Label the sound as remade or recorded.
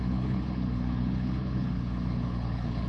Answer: remade